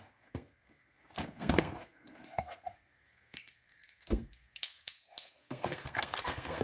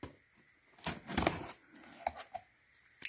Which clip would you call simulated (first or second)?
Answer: first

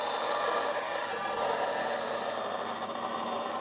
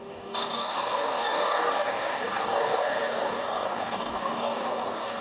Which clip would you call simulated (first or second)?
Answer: second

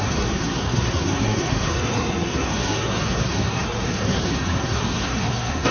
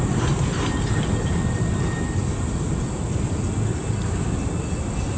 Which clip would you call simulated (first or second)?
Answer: first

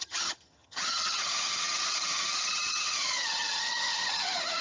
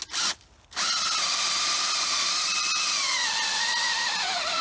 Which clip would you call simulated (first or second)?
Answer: first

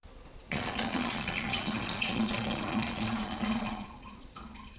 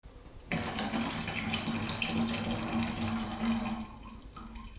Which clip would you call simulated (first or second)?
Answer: first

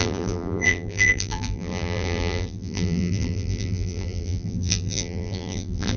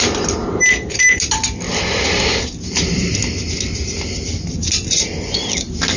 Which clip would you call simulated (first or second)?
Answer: first